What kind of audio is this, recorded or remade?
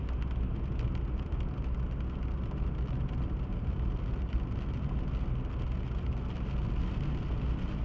recorded